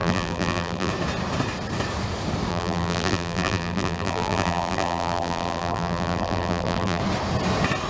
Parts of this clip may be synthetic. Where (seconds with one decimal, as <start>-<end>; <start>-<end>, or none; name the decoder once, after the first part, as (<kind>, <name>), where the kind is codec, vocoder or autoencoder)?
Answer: 0.0-0.9 (vocoder, BigVGAN v2); 2.5-7.0